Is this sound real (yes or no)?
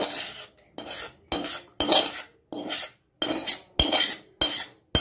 yes